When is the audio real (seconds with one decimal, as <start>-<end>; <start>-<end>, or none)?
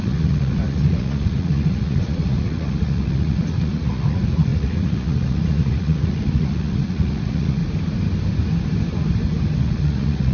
7.6-9.6